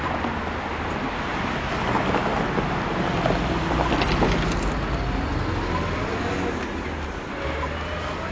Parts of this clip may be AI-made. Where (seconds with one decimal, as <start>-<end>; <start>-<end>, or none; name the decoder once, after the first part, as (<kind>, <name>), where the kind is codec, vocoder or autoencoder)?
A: none